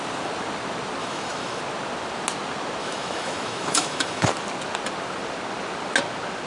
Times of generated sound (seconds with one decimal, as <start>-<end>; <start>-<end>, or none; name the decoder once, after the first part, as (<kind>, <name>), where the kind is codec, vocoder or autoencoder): 1.0-1.6 (autoencoder, DAC-VAE); 2.8-4.3

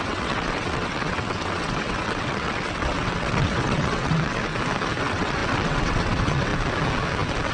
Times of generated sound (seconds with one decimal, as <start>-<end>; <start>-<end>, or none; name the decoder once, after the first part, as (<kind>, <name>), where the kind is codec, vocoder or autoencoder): 0.0-4.5 (vocoder, WaveNeXt); 5.0-6.5

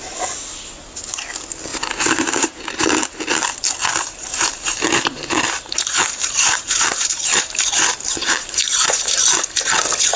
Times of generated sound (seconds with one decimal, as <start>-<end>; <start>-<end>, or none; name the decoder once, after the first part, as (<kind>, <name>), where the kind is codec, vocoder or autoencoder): 1.7-3.3 (vocoder, BigVGAN v2); 3.8-7.7; 8.2-9.6

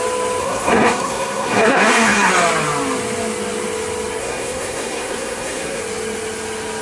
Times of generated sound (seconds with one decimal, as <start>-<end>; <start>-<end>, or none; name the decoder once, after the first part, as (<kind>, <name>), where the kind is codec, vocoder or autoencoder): 0.4-2.3 (codec, SNAC); 4.2-5.8

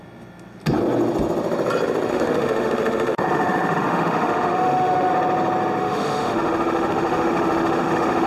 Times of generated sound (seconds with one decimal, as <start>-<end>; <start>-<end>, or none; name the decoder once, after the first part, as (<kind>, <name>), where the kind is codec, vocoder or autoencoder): 2.1-5.1 (autoencoder, DAC-VAE); 5.8-8.3

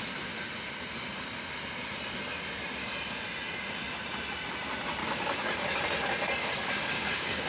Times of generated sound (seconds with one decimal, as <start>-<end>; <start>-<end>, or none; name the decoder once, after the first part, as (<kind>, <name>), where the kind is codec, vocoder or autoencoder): 5.0-5.8 (codec, DAC); 6.4-7.5

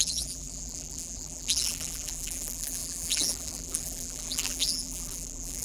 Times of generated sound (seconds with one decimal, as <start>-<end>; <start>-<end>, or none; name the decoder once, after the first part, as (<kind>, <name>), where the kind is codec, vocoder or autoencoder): 0.0-5.6 (vocoder, BigVGAN v2)